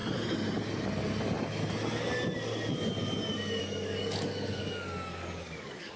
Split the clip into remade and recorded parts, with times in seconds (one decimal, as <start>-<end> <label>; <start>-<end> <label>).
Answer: 0.0-3.6 recorded; 3.6-6.0 remade